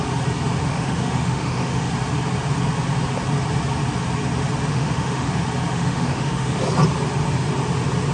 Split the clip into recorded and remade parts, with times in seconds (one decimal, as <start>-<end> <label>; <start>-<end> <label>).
0.0-0.6 recorded; 0.6-1.9 remade; 1.9-4.7 recorded; 4.7-5.3 remade; 5.3-5.7 recorded; 5.7-6.6 remade; 6.6-8.1 recorded